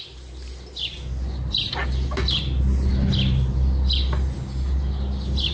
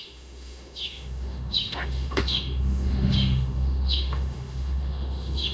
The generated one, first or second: second